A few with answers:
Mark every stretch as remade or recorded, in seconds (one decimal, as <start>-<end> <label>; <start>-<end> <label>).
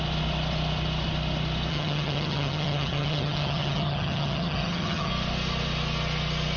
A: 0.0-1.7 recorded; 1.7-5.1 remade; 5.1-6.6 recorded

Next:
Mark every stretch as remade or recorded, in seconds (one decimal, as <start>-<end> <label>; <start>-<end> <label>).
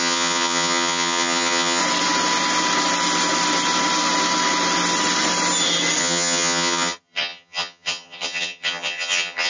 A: 0.0-1.8 remade; 1.8-6.0 recorded; 6.0-9.5 remade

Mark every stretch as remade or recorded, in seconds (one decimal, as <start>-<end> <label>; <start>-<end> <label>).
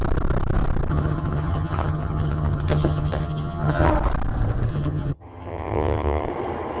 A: 0.0-0.9 recorded; 0.9-3.9 remade; 3.9-4.7 recorded; 4.7-6.3 remade; 6.3-6.8 recorded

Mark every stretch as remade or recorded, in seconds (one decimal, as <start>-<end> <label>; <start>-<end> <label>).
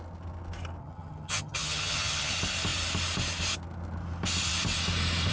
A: 0.0-0.8 recorded; 0.8-2.3 remade; 2.3-5.3 recorded